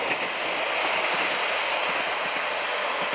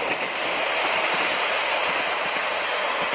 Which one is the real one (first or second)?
first